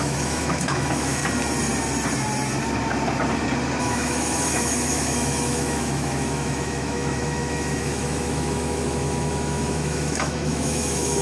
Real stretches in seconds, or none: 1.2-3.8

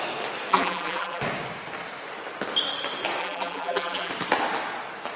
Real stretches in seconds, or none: 0.0-0.5; 1.2-3.2; 4.1-5.2

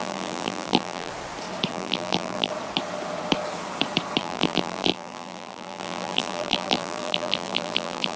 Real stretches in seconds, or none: 1.1-1.7; 2.5-4.2